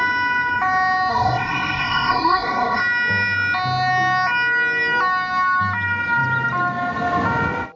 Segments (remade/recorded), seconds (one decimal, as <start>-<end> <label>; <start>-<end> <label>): 0.0-1.1 recorded; 1.1-2.8 remade; 2.8-7.8 recorded